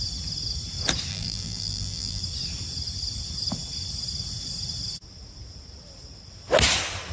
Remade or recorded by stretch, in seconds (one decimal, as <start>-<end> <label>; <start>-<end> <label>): 0.0-1.1 recorded; 1.1-2.2 remade; 2.2-7.1 recorded